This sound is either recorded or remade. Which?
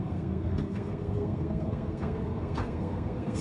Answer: remade